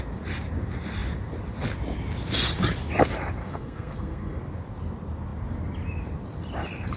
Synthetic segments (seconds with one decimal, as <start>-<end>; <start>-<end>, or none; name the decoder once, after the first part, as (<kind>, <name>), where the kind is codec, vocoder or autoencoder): 3.4-4.4 (codec, SNAC)

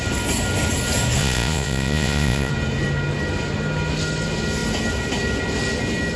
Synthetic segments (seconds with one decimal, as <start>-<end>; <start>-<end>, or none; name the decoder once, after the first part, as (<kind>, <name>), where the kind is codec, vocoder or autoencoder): 1.2-2.5 (vocoder, Vocos)

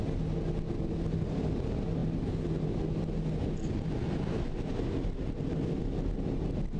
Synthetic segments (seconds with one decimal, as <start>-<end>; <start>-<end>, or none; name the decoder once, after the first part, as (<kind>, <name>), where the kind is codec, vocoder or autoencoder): none

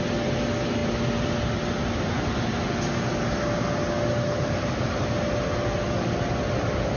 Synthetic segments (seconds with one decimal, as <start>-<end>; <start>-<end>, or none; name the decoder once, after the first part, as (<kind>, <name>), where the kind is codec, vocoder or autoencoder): none

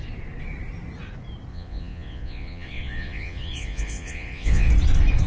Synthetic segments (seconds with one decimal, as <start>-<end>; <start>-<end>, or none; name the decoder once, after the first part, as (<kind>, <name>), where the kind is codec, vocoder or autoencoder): 1.5-4.7 (vocoder, Vocos)

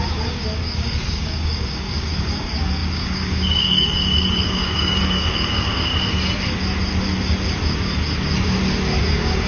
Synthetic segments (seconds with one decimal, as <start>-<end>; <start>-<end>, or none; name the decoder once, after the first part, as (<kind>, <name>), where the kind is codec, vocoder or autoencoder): 0.0-5.9 (codec, DAC); 9.0-9.5